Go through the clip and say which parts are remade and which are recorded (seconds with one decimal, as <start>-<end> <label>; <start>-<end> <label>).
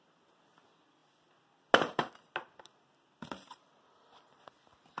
0.0-5.0 recorded